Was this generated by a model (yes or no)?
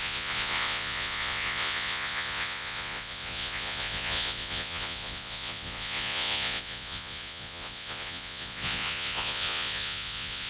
yes